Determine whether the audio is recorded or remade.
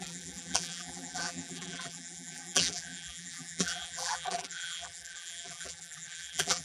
remade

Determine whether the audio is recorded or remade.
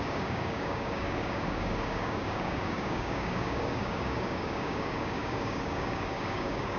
remade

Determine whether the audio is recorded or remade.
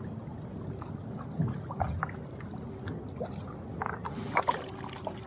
recorded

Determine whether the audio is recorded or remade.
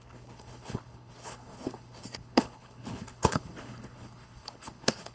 remade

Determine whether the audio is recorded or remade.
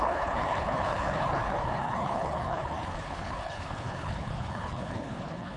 remade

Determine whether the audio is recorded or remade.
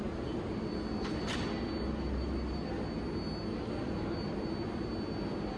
recorded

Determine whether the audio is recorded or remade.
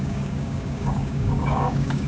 remade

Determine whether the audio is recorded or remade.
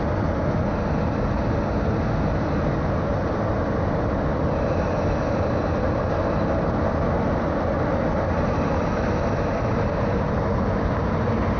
recorded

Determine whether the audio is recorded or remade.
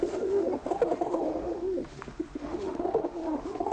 remade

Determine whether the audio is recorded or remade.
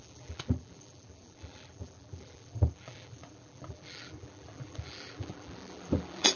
remade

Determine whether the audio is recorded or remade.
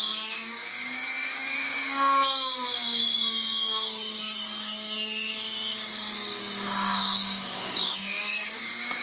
remade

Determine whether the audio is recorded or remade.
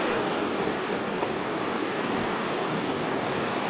remade